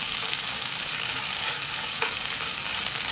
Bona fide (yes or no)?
no